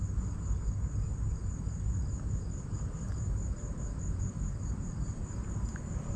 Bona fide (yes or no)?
yes